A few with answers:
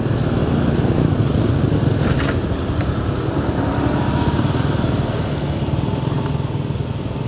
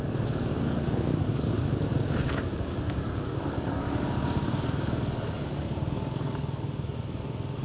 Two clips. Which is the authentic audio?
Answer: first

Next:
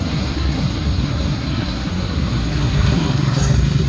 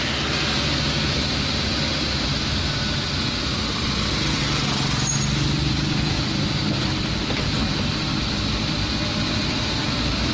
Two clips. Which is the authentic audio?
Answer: second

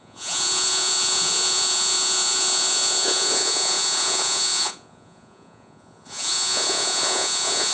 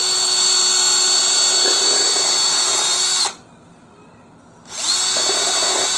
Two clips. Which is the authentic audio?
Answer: second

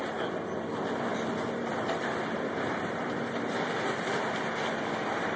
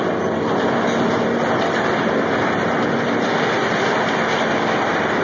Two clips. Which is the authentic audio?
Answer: second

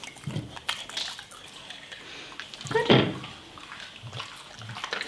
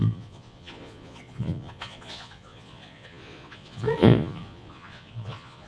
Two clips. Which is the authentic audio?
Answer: first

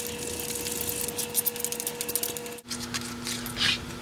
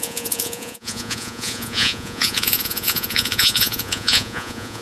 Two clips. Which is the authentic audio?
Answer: first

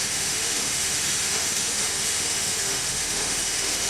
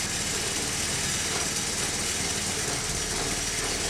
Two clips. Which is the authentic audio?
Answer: second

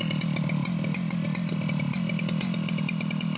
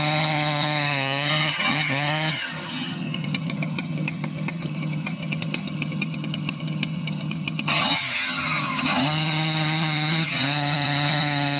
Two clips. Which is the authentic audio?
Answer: first